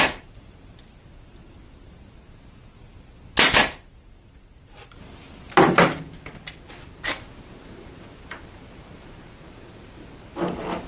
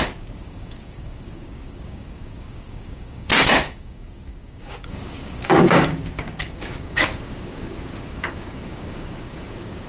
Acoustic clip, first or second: first